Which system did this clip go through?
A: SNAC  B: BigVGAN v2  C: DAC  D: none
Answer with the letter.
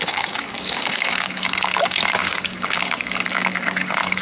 C